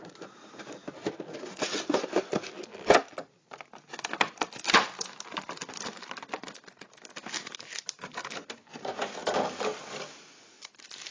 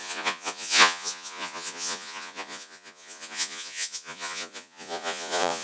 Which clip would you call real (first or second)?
first